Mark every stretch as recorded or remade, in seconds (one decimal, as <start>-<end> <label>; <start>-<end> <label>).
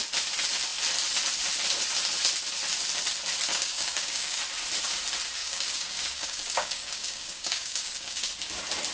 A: 0.0-3.5 recorded; 3.5-4.4 remade; 4.4-5.4 recorded; 5.4-8.3 remade; 8.3-8.9 recorded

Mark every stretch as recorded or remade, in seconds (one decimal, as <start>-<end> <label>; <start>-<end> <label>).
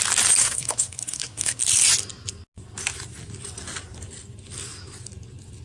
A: 0.0-0.4 recorded; 0.4-1.6 remade; 1.6-5.6 recorded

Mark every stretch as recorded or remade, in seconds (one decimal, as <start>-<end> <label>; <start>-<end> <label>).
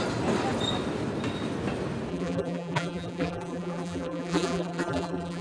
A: 0.0-2.1 recorded; 2.1-5.4 remade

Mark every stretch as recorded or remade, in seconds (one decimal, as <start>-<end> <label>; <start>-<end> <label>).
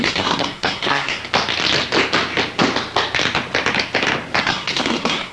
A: 0.0-1.2 remade; 1.2-4.4 recorded; 4.4-5.3 remade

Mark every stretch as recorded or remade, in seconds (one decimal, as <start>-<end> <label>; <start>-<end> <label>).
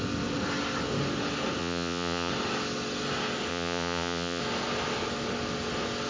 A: 0.0-1.6 recorded; 1.6-2.3 remade; 2.3-3.5 recorded; 3.5-4.4 remade; 4.4-6.1 recorded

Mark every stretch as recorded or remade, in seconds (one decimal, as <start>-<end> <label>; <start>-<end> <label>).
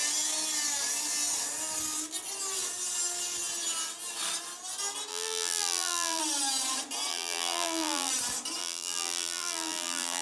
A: 0.0-5.1 recorded; 5.1-6.2 remade; 6.2-7.1 recorded; 7.1-8.1 remade; 8.1-8.6 recorded; 8.6-10.2 remade